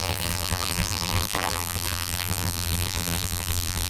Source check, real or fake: fake